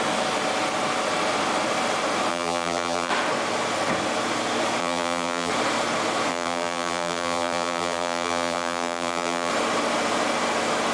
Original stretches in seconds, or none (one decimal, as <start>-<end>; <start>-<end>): 0.0-2.3; 3.1-4.8; 5.5-6.3; 9.5-10.9